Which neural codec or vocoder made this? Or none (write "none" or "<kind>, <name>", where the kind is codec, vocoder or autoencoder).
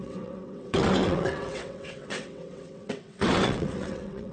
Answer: vocoder, WaveNeXt